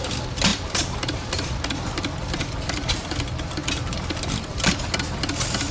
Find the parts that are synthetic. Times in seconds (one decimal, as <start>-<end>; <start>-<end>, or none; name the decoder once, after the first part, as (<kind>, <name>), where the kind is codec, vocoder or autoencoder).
0.5-2.5 (vocoder, BigVGAN v2); 3.6-4.7

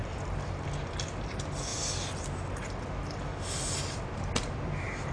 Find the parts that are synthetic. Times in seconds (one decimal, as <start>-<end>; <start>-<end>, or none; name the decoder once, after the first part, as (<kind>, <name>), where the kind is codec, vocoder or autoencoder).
none

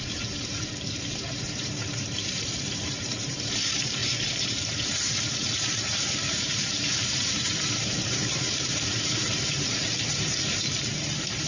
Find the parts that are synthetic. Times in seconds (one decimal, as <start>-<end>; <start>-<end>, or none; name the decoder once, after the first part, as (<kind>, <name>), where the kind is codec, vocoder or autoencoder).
0.0-11.5 (vocoder, BigVGAN v2)

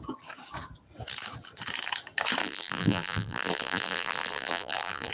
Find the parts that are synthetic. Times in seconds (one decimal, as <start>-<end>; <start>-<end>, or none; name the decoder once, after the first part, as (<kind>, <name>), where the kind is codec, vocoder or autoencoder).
2.4-5.1 (vocoder, BigVGAN v2)

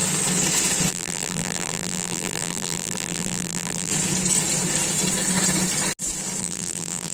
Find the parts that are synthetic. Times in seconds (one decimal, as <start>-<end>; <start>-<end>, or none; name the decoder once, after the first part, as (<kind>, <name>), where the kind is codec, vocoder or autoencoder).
0.9-3.9 (vocoder, BigVGAN v2); 6.4-7.1

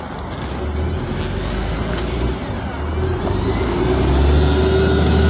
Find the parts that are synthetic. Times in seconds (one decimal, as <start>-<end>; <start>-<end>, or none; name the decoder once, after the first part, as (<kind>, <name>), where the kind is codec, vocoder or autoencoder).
3.1-4.1 (vocoder, BigVGAN v2)

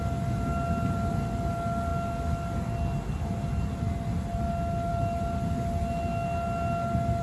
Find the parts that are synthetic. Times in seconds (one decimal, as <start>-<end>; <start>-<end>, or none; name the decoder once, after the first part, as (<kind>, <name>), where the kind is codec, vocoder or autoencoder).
none